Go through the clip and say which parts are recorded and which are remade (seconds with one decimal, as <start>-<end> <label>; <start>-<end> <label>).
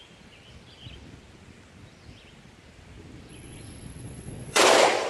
0.0-3.3 recorded; 3.3-4.6 remade; 4.6-5.1 recorded